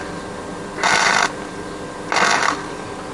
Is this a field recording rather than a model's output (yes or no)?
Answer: yes